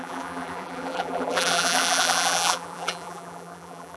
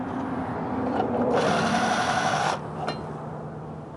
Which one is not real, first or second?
first